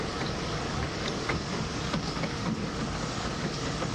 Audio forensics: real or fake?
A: fake